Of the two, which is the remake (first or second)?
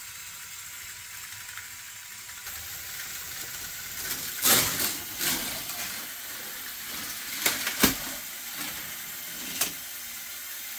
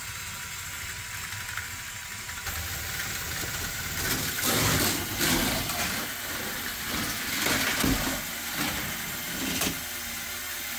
first